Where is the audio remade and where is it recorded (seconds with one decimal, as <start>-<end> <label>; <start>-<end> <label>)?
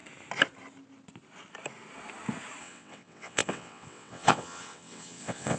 0.0-2.6 recorded; 2.6-5.6 remade